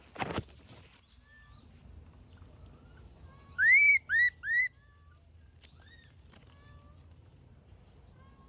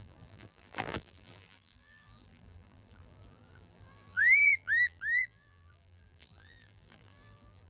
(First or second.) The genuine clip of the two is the first